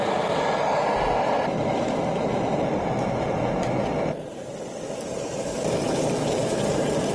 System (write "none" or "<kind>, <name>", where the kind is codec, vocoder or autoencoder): none